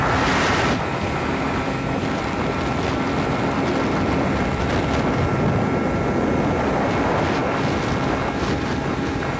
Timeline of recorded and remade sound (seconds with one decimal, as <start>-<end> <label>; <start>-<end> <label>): 0.0-9.4 recorded